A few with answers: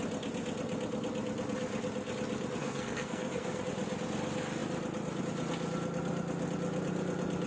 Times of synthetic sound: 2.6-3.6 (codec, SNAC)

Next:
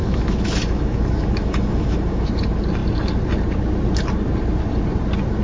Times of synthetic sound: 0.0-2.3 (autoencoder, DAC-VAE)

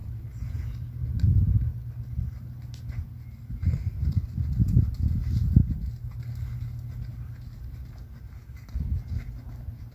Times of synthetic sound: 8.4-9.0 (codec, DAC)

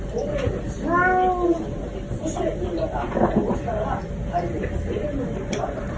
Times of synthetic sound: none

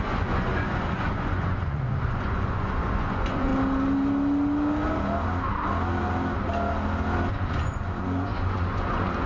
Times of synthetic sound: 0.0-3.5 (vocoder, Vocos); 7.3-9.3

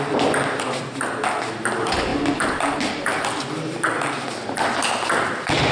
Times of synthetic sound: none